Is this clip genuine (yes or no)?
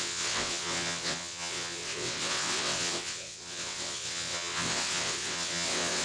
no